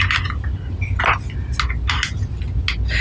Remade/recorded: recorded